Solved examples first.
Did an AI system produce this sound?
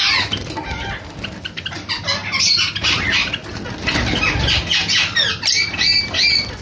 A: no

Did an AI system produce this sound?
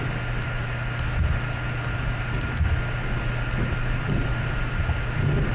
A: no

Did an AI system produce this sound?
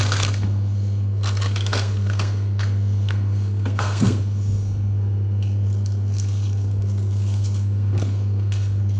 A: yes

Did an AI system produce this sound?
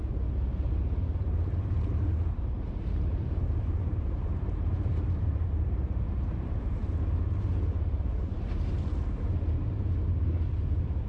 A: yes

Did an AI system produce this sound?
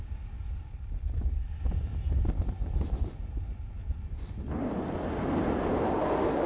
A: no